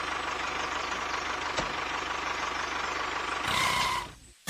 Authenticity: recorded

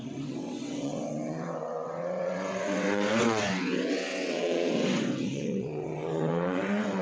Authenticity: remade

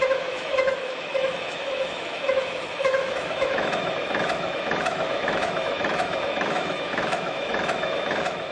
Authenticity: remade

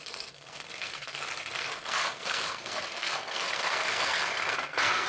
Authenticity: remade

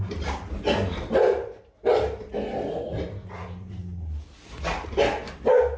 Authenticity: recorded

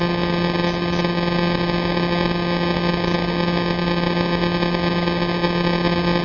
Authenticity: recorded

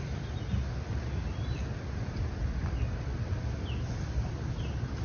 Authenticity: recorded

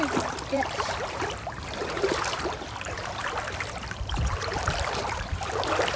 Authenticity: remade